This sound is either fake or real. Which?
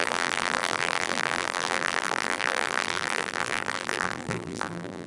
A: fake